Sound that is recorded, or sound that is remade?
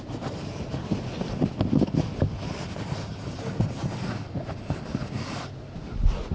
recorded